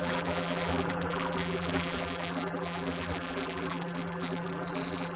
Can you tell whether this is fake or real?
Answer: fake